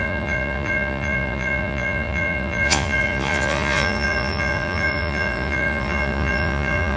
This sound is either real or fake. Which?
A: fake